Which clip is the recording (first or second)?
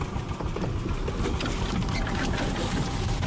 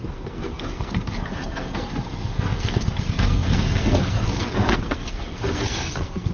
first